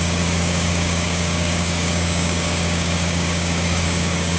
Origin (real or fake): fake